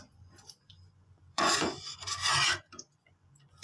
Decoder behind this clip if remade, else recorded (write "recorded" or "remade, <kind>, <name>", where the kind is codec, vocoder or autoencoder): remade, vocoder, Vocos